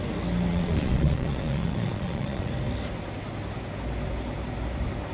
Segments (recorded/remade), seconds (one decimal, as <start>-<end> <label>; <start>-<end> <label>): 0.0-0.5 recorded; 0.5-2.5 remade; 2.5-5.1 recorded